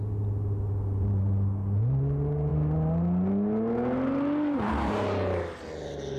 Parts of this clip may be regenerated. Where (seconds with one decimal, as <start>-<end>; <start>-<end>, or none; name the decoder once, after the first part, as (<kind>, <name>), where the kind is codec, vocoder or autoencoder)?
none